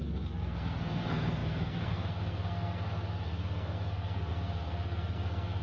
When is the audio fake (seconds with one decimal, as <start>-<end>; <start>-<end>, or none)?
0.0-5.6